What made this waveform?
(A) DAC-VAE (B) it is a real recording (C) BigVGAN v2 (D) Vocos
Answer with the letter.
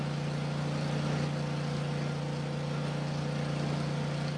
B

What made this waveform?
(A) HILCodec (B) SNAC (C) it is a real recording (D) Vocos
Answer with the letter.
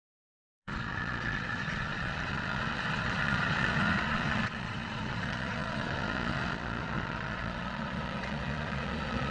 D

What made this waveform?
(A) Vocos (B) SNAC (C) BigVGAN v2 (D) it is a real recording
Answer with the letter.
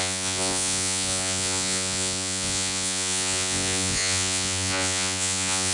A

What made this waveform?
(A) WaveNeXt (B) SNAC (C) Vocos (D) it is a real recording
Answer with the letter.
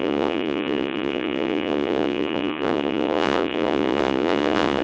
C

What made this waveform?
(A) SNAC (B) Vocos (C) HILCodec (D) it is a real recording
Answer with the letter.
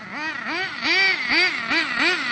D